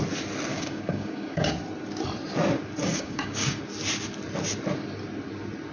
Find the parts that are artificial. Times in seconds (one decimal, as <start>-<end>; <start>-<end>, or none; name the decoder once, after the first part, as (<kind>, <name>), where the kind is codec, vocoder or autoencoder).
0.5-1.5 (codec, DAC); 2.8-3.6

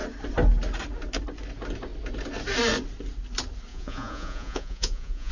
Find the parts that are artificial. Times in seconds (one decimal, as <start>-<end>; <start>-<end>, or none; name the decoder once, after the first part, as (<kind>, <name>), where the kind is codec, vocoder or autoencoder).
3.7-5.3 (vocoder, Vocos)

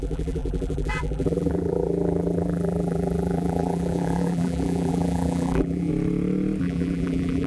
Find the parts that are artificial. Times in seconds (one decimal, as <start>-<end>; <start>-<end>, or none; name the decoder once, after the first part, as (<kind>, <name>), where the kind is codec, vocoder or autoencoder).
0.0-5.9 (vocoder, BigVGAN v2); 6.6-7.5

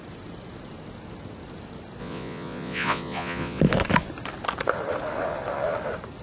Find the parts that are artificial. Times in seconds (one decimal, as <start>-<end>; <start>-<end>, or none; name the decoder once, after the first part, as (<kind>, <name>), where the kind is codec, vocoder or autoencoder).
2.0-3.6 (vocoder, Vocos)

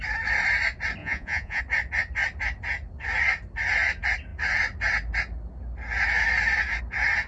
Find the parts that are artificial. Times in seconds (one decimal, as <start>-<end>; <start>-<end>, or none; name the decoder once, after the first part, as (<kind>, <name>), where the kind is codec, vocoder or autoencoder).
1.0-1.6 (vocoder, Vocos)

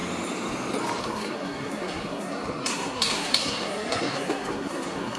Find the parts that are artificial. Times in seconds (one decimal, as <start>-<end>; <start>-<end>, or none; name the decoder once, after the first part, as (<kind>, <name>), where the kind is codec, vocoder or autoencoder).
1.0-5.2 (codec, SNAC)

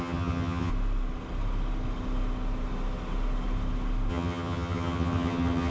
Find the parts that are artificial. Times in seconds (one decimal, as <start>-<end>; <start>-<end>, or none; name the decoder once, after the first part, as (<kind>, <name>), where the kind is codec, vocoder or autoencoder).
0.0-0.7 (vocoder, HiFi-GAN); 4.1-5.7